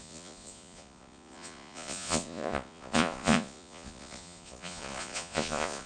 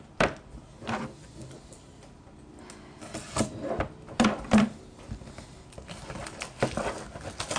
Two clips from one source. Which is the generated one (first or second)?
first